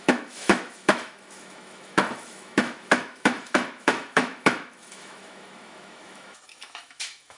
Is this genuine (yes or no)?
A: no